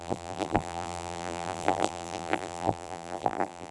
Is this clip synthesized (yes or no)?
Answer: yes